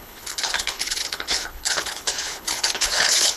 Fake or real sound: fake